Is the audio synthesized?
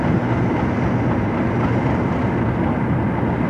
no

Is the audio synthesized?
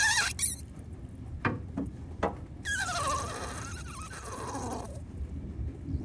no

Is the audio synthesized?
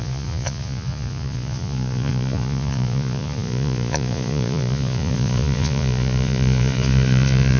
yes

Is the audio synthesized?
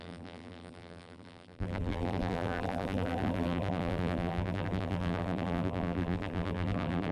yes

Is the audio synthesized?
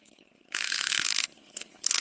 yes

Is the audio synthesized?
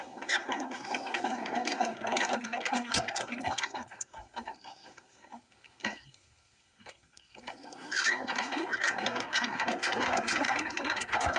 yes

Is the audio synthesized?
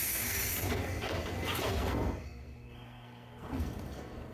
yes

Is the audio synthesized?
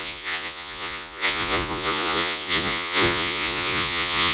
yes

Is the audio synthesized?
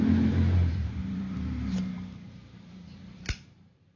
yes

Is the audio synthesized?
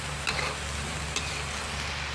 no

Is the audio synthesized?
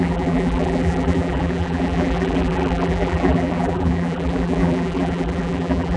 yes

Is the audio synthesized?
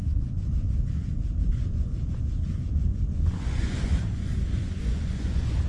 yes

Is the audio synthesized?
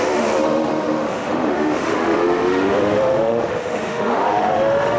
yes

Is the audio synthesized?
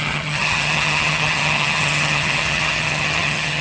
yes